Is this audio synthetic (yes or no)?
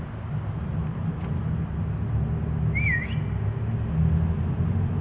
no